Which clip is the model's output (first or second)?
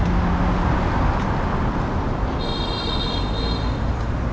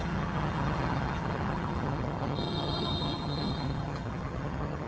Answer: second